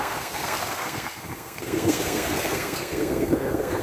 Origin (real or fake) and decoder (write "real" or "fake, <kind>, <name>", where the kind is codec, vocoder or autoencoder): fake, codec, SNAC